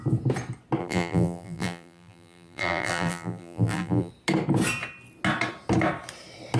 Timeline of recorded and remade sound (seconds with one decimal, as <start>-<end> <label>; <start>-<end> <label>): 0.0-0.8 recorded; 0.8-4.1 remade; 4.1-6.6 recorded